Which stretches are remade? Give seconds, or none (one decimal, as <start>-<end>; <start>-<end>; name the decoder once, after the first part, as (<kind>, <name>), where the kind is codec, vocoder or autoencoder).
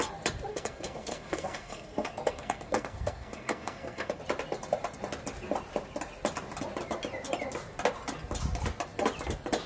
0.5-4.2 (codec, SNAC)